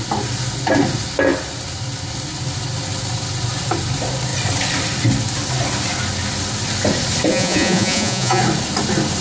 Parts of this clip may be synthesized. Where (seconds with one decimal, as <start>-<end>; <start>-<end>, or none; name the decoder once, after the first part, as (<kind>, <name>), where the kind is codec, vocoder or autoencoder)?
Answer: 7.3-8.4 (vocoder, Vocos)

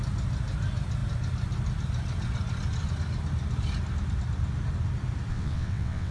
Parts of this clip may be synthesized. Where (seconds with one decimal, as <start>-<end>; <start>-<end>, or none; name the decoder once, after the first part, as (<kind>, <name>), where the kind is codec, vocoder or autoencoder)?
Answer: 5.3-6.1 (vocoder, WaveNeXt)

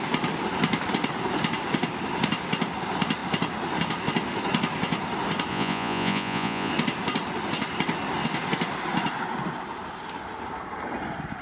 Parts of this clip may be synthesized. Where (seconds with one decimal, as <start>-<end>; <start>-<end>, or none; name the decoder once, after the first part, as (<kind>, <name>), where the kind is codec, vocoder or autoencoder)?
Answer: 5.5-6.7 (vocoder, Vocos)

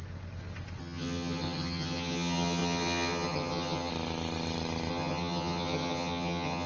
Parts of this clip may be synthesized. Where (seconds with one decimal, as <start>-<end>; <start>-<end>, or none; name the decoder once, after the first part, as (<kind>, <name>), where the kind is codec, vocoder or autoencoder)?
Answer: 0.8-3.9 (vocoder, HiFi-GAN); 4.9-6.7

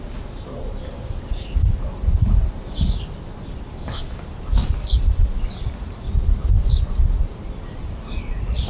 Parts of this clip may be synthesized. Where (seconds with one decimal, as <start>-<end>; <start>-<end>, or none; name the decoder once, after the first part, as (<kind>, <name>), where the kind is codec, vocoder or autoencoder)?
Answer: none